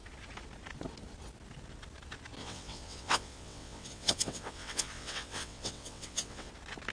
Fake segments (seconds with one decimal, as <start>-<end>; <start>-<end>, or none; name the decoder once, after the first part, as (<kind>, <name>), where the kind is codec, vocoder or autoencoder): 2.4-6.5 (vocoder, WaveNeXt)